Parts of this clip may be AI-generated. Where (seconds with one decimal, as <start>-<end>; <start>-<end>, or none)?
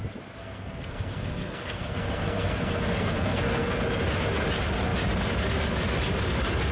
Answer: 0.4-3.8